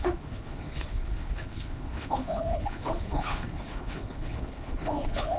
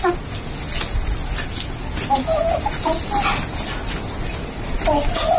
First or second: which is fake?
first